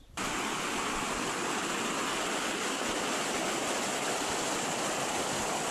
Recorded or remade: recorded